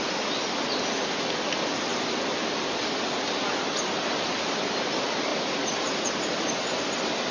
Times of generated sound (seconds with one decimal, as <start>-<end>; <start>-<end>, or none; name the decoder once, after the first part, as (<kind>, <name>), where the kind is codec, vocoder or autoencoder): 5.3-6.1 (vocoder, Vocos)